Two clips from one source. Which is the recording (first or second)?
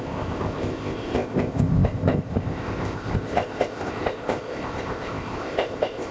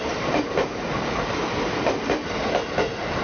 second